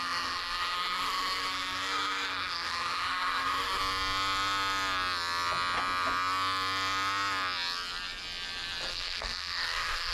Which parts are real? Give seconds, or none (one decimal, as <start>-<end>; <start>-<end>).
3.8-8.9